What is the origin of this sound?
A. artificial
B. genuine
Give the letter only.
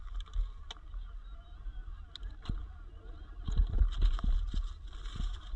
B